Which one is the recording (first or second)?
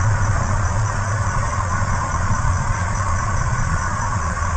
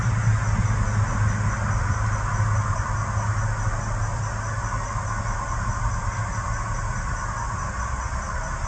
second